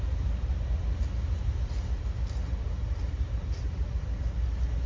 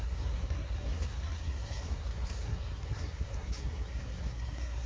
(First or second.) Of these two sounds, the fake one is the second